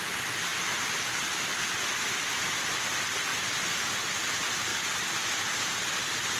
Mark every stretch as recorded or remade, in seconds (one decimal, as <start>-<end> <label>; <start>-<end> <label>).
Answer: 0.0-3.3 recorded; 3.3-3.9 remade; 3.9-6.4 recorded